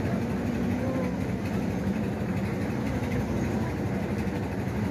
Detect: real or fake real